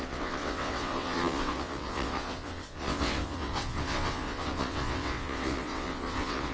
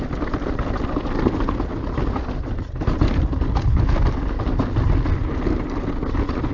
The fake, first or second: first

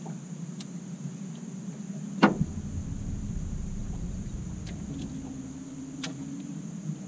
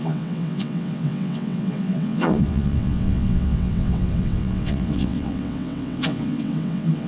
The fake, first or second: second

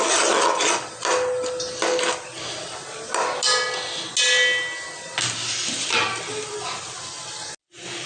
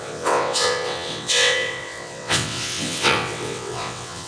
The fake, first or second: second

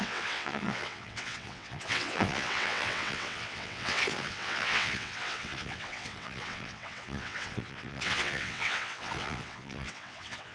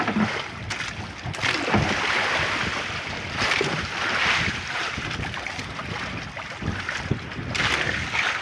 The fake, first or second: first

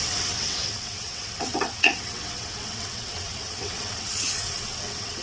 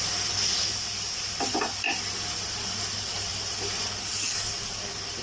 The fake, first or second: first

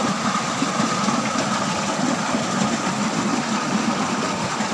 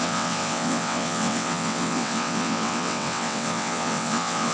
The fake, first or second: second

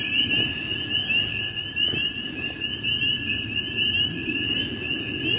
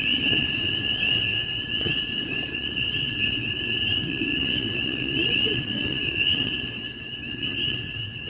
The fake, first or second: second